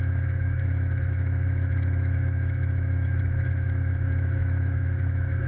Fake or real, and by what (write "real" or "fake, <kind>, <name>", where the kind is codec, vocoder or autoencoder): fake, autoencoder, DAC-VAE